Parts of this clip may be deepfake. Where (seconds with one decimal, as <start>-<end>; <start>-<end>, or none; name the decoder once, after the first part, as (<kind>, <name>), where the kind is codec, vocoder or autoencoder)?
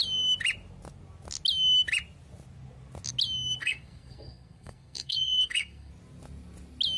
3.6-5.9 (codec, SNAC)